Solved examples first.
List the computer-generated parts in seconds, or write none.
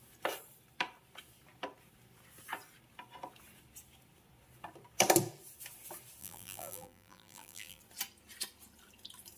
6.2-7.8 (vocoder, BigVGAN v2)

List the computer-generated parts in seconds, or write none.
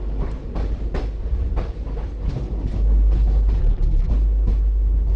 3.6-4.1 (vocoder, BigVGAN v2)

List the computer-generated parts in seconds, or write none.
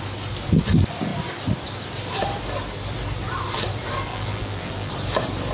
4.1-4.9 (vocoder, BigVGAN v2)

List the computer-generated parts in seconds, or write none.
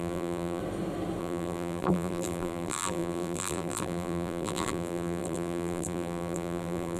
0.0-0.6 (vocoder, BigVGAN v2); 1.2-7.0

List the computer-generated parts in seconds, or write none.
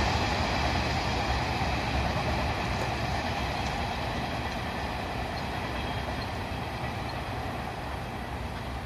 3.1-7.8 (vocoder, BigVGAN v2)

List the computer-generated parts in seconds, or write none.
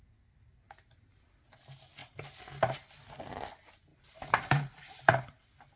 2.0-2.9 (vocoder, BigVGAN v2); 3.9-5.8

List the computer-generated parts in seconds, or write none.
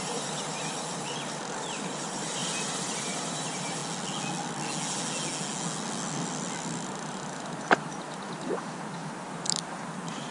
0.0-2.4 (vocoder, BigVGAN v2); 3.0-3.8; 6.9-9.0; 9.5-10.3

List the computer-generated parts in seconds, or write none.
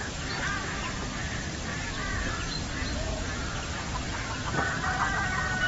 1.7-4.5 (vocoder, BigVGAN v2)